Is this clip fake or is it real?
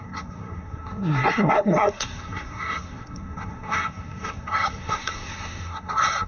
fake